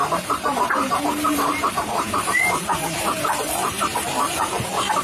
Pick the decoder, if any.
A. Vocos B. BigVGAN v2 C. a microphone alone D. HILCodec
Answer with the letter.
B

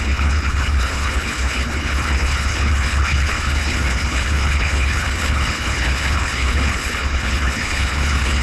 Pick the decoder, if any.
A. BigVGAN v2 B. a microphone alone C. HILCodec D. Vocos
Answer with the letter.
C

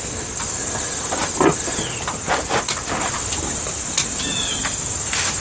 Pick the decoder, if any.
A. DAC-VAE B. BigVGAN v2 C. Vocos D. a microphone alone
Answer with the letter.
D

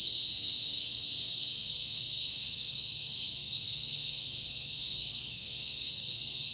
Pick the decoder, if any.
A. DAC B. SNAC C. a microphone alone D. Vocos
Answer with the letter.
B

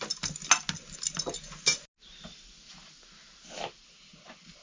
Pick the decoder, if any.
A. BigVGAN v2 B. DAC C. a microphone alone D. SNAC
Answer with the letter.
C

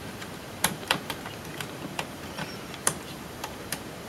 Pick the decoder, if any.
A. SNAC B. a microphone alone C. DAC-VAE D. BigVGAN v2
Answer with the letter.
D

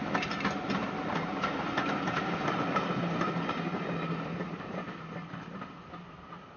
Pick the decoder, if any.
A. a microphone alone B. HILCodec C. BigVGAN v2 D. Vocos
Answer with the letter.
A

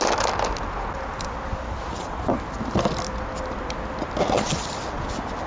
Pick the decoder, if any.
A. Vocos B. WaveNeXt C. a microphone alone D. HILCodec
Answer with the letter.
C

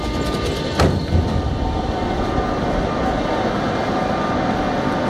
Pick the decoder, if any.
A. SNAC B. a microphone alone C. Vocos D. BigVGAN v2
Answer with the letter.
B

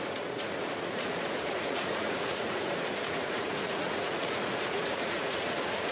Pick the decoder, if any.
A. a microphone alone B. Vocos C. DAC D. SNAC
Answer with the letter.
B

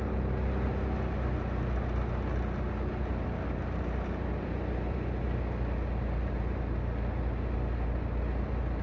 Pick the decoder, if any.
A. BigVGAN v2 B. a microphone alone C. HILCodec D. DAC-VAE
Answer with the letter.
B